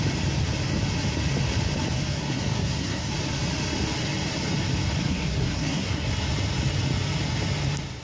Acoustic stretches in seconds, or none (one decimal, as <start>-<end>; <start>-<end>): 0.0-2.1; 3.1-5.0; 6.1-8.0